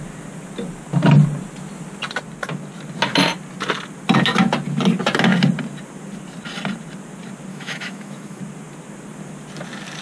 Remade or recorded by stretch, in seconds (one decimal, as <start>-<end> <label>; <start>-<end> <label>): 0.0-7.5 recorded; 7.5-8.4 remade; 8.4-10.0 recorded